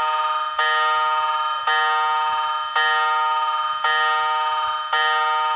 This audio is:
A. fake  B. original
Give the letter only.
B